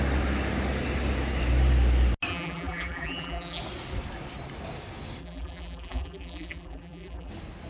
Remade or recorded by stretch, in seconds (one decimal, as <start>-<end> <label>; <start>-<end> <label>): 0.0-2.3 recorded; 2.3-3.6 remade; 3.6-5.2 recorded; 5.2-7.3 remade; 7.3-7.7 recorded